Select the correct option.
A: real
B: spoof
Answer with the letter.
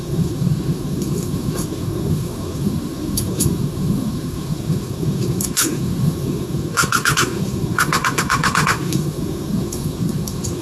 B